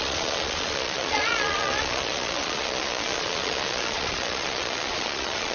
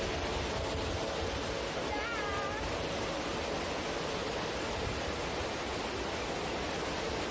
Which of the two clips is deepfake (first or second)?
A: first